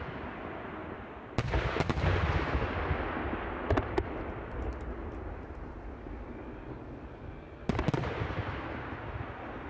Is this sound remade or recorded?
recorded